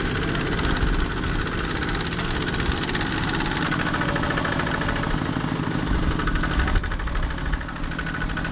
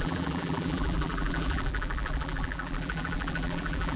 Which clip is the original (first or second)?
first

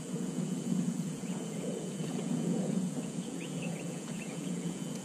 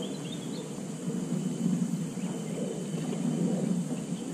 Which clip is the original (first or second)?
second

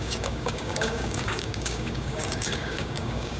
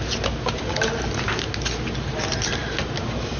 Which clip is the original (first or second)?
second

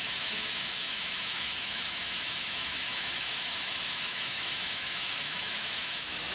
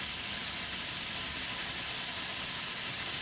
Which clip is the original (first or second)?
second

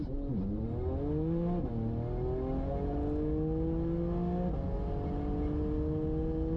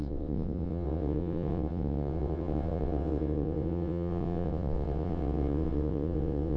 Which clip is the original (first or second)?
first